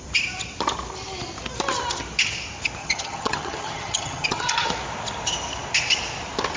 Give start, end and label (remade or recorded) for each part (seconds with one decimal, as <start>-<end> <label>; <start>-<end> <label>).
0.0-2.8 recorded; 2.8-4.7 remade; 4.7-6.6 recorded

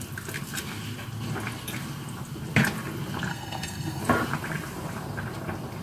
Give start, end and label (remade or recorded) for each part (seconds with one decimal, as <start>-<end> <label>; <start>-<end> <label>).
0.0-3.3 recorded; 3.3-4.0 remade; 4.0-5.8 recorded

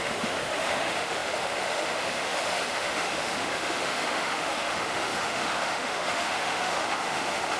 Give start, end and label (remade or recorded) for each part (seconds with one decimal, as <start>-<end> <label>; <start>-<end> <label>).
0.0-7.6 remade